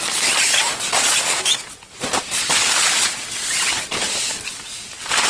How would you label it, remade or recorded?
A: recorded